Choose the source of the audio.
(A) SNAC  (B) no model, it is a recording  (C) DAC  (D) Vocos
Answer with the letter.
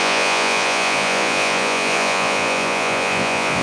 D